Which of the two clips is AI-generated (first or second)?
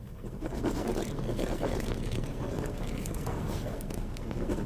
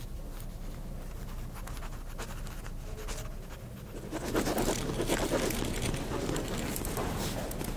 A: first